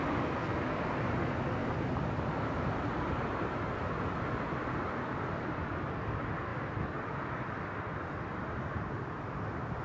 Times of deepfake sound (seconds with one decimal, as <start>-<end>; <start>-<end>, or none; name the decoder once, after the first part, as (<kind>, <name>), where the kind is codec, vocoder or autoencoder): 1.6-4.9 (vocoder, BigVGAN v2); 7.9-9.8